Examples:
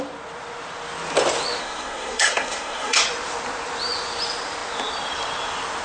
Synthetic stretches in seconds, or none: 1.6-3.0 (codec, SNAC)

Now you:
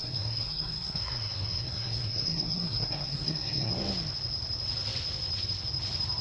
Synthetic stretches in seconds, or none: 0.0-3.7 (codec, SNAC)

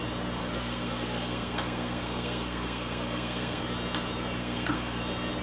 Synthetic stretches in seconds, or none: 0.4-3.6 (codec, SNAC); 4.4-5.0